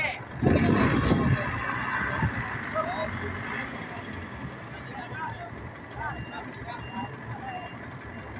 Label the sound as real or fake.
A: real